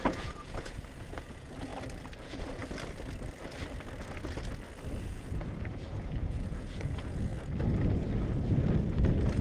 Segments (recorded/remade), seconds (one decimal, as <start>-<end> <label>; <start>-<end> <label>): 0.0-1.7 remade; 1.7-2.2 recorded; 2.2-2.6 remade; 2.6-5.0 recorded; 5.0-7.3 remade; 7.3-9.4 recorded